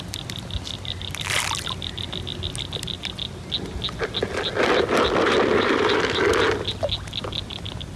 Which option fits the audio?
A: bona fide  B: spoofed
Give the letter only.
A